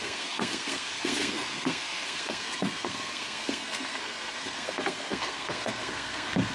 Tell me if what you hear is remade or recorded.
remade